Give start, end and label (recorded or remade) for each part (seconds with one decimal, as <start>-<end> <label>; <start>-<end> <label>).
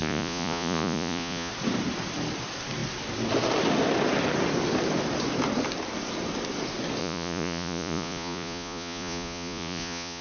0.0-1.5 remade; 1.5-7.0 recorded; 7.0-10.2 remade